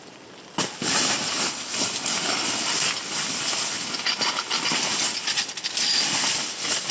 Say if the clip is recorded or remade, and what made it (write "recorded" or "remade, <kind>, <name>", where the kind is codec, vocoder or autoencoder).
recorded